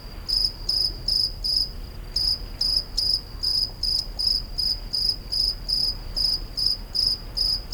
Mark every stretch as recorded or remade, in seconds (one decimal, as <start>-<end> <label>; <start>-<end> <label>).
0.0-3.5 recorded; 3.5-5.2 remade; 5.2-5.8 recorded; 5.8-6.6 remade; 6.6-7.7 recorded

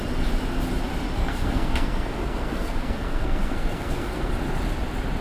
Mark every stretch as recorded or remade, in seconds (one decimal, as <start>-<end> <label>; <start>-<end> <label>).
0.0-1.2 recorded; 1.2-4.3 remade; 4.3-5.2 recorded

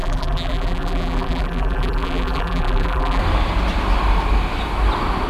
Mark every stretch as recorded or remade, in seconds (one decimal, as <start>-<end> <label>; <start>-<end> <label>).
0.0-3.2 remade; 3.2-5.3 recorded

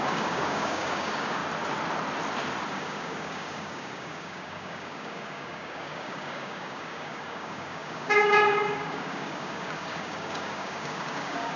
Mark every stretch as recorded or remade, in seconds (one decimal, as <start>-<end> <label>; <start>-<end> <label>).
0.0-1.4 remade; 1.4-2.7 recorded; 2.7-11.6 remade

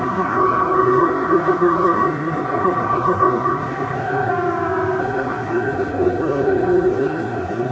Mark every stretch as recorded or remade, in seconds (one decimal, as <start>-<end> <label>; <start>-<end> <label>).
0.0-4.3 remade; 4.3-5.0 recorded; 5.0-7.7 remade

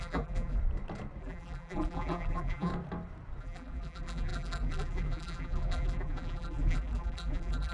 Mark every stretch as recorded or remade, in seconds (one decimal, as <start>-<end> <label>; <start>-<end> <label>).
0.0-0.6 remade; 0.6-1.2 recorded; 1.2-2.7 remade; 2.7-3.4 recorded; 3.4-7.7 remade

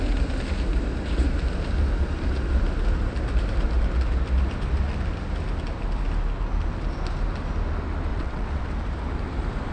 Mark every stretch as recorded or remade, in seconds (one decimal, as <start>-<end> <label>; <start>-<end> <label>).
0.0-8.1 recorded; 8.1-8.7 remade; 8.7-9.7 recorded

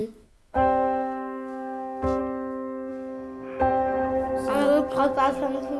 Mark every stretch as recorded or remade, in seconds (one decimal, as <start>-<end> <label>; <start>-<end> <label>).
0.0-2.2 remade; 2.2-5.8 recorded